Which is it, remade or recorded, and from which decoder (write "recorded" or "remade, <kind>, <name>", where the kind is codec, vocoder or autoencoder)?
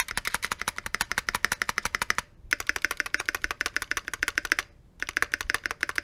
recorded